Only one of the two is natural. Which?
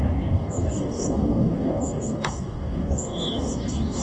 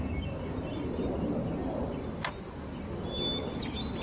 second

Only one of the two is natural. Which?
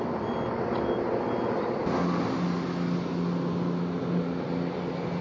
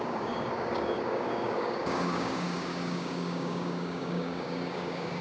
first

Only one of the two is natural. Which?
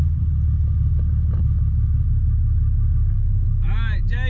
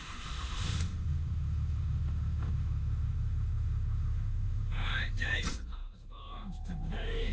first